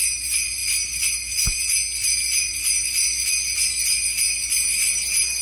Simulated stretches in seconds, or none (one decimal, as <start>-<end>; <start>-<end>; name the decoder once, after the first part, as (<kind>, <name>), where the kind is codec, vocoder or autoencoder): none